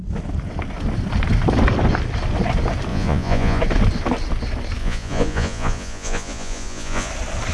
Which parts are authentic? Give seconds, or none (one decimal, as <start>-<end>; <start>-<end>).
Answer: 0.0-2.9; 3.6-4.8; 7.1-7.5

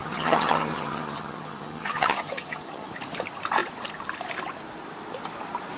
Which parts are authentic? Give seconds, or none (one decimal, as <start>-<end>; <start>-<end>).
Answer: 2.9-5.8

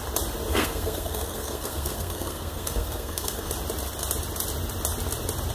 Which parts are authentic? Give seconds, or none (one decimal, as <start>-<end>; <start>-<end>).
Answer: 0.0-0.5; 3.5-5.5

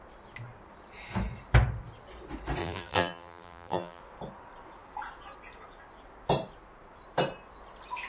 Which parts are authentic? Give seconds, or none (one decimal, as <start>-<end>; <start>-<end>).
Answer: 0.0-2.6; 4.0-8.1